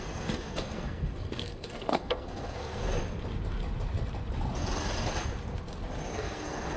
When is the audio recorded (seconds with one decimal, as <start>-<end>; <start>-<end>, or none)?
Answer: 2.8-6.1

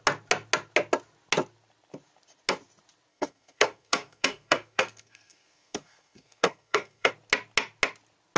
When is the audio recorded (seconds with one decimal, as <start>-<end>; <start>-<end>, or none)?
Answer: 0.0-3.1; 7.1-8.4

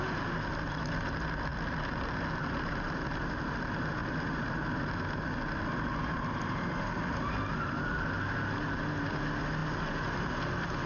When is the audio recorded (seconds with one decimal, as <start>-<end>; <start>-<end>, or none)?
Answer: 0.0-10.9

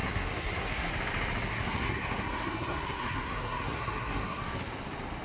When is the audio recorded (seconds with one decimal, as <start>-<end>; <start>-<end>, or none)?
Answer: 0.9-1.5; 4.4-5.2